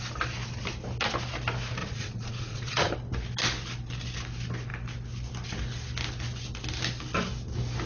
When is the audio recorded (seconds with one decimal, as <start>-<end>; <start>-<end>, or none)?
0.0-1.8; 2.9-7.9